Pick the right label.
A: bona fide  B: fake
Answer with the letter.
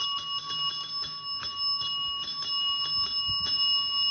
A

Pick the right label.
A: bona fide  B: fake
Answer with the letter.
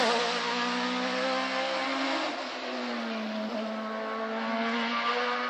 A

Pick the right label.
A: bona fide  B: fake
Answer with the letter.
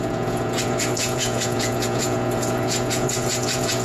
B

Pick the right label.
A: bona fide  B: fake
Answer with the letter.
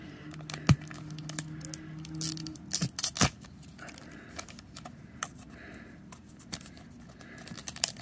A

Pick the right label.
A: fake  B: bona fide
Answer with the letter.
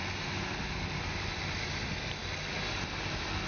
B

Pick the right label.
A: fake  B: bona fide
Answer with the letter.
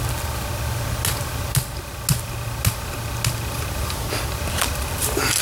B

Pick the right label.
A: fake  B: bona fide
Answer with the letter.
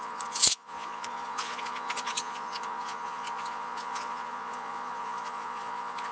A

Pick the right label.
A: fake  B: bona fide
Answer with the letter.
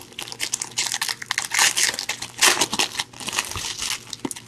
B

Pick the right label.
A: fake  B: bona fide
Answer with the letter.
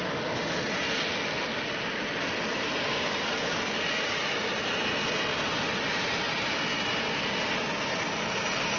B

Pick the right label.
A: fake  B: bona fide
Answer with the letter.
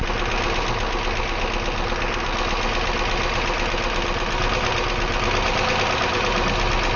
B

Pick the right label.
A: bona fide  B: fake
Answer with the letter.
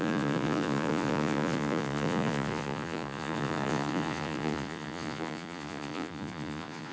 B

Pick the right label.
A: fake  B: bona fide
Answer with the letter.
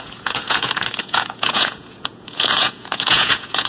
A